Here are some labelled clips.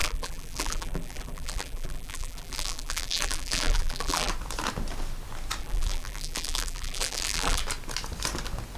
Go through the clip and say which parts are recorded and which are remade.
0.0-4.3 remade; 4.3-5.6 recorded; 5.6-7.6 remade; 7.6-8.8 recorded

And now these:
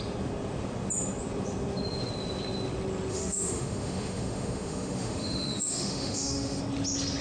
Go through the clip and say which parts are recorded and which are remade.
0.0-3.1 recorded; 3.1-6.6 remade; 6.6-7.2 recorded